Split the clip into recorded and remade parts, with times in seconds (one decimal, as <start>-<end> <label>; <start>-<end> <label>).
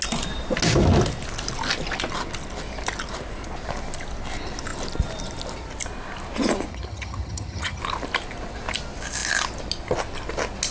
0.0-6.7 recorded; 6.7-7.8 remade; 7.8-10.7 recorded